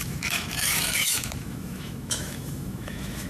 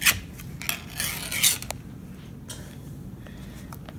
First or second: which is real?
second